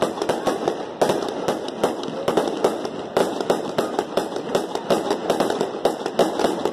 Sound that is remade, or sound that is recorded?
recorded